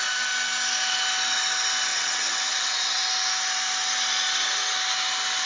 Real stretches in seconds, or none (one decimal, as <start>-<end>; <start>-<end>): 0.0-1.9; 3.0-5.5